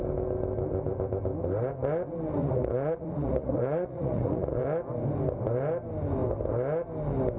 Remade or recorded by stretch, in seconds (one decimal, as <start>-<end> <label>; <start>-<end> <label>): 0.0-2.4 recorded; 2.4-4.6 remade; 4.6-7.4 recorded